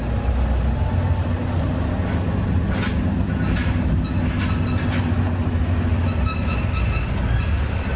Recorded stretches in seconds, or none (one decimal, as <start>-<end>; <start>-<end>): 0.0-8.0